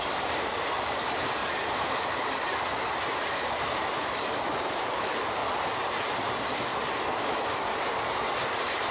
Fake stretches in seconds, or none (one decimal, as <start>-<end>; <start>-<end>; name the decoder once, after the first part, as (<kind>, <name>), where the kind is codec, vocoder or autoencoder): 0.0-5.4 (vocoder, BigVGAN v2); 6.0-6.7; 7.2-8.9